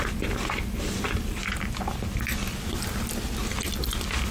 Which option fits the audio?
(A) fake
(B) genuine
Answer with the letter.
B